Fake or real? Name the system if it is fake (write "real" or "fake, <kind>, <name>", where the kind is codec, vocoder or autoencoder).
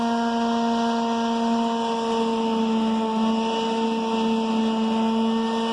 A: real